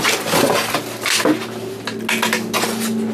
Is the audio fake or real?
real